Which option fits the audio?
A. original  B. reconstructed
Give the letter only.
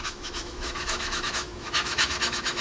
B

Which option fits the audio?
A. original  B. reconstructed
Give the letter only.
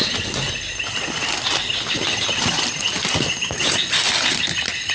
A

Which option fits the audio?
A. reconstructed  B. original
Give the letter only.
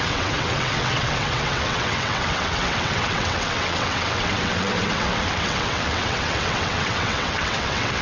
A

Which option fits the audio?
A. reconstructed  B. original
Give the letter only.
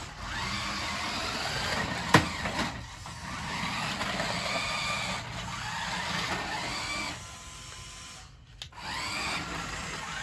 B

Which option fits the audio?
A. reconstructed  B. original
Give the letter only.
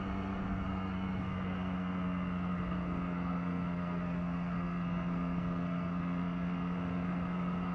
A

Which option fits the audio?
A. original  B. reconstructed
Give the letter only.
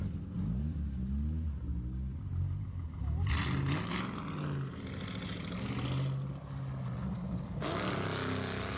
A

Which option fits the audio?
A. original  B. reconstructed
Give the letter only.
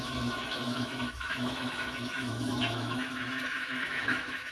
B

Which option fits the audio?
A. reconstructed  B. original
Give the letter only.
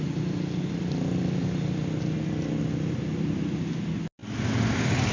B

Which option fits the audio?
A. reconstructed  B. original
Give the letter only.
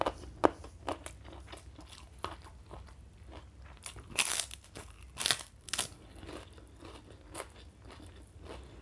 B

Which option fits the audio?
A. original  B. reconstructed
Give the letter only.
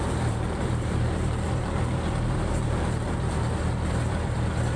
B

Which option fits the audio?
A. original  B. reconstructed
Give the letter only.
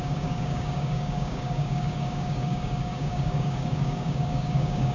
B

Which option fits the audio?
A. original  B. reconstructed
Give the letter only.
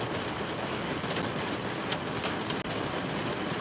A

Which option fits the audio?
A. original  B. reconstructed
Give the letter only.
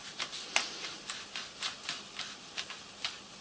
A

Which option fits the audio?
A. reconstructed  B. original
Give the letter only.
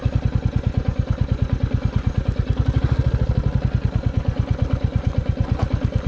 B